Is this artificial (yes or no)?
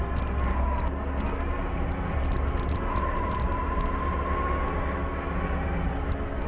no